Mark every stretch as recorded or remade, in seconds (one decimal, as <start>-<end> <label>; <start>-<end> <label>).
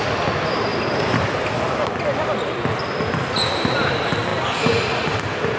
0.0-0.7 recorded; 0.7-3.9 remade; 3.9-5.6 recorded